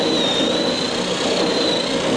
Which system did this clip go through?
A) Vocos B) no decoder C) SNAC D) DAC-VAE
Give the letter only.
B